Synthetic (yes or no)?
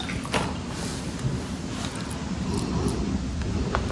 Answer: no